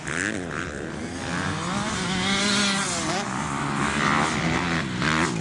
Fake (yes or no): no